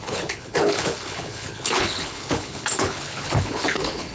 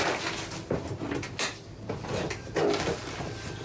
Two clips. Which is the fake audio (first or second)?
first